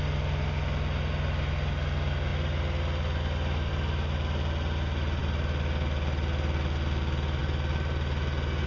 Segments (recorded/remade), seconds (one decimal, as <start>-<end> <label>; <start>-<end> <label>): 0.0-8.7 recorded